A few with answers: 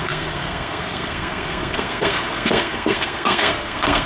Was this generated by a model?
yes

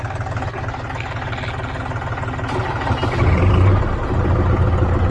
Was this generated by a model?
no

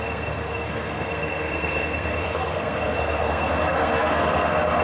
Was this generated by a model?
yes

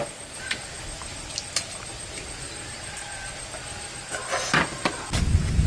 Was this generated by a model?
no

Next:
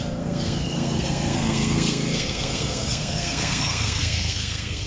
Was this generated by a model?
yes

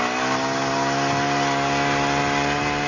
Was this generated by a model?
no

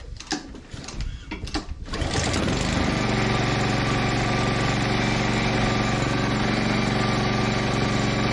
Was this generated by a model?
no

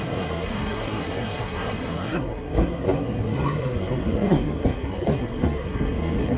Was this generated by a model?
yes